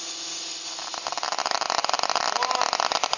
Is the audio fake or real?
real